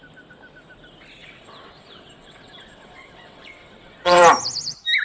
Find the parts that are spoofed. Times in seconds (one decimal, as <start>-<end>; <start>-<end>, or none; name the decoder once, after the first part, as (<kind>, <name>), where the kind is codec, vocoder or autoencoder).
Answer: 1.2-4.2 (vocoder, WaveNeXt)